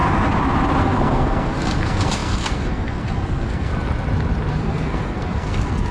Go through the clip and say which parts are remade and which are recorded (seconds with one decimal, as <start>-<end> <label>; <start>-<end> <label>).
0.0-0.8 recorded; 0.8-3.7 remade; 3.7-4.5 recorded; 4.5-5.9 remade